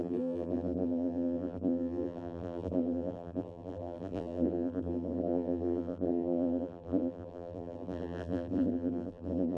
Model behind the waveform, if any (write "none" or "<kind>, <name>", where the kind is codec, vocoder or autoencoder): vocoder, BigVGAN v2